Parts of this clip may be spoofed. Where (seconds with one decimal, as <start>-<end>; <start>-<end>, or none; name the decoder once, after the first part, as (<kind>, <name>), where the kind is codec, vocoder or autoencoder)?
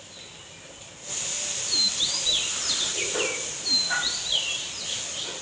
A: 1.8-5.0 (vocoder, BigVGAN v2)